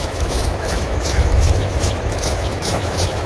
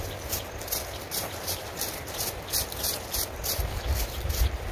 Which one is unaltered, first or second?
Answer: second